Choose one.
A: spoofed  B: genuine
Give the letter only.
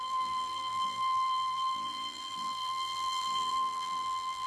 A